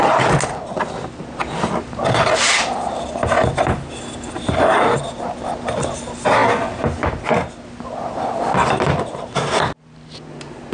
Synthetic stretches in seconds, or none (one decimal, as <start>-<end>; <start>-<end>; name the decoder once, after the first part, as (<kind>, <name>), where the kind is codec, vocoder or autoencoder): none